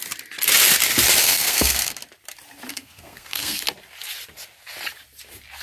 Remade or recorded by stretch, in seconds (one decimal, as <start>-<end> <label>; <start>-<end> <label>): 0.0-1.2 recorded; 1.2-2.0 remade; 2.0-2.7 recorded; 2.7-3.6 remade; 3.6-5.6 recorded